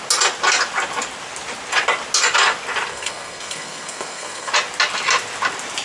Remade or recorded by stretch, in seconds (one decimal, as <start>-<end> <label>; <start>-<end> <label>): 0.0-2.9 recorded; 2.9-4.5 remade; 4.5-5.8 recorded